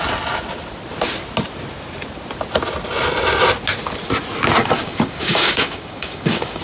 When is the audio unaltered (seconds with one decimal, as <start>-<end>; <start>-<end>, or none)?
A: 0.0-4.6